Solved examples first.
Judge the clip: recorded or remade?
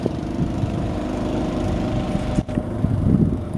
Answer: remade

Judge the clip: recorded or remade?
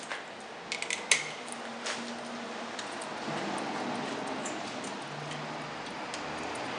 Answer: recorded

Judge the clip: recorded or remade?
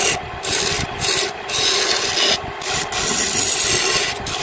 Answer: recorded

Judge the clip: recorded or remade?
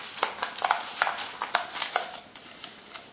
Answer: remade